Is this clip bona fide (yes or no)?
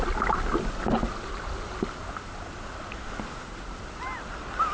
yes